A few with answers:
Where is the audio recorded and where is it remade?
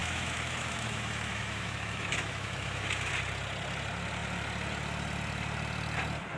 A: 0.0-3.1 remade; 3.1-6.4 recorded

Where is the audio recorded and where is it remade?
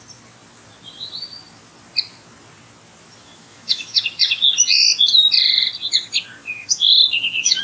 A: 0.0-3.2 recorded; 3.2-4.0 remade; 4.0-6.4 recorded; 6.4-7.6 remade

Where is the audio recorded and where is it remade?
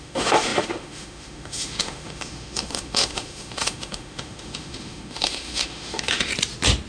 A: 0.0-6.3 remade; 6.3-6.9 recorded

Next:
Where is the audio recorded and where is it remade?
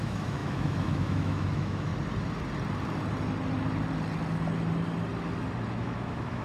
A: 0.0-1.9 remade; 1.9-5.7 recorded; 5.7-6.4 remade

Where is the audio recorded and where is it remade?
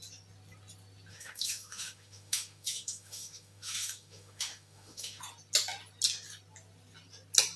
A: 0.0-1.1 recorded; 1.1-5.2 remade; 5.2-7.6 recorded